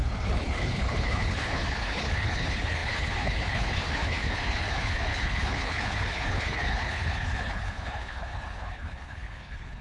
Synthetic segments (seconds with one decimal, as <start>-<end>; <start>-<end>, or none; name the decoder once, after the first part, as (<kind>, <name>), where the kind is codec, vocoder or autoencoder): 0.0-9.8 (codec, HILCodec)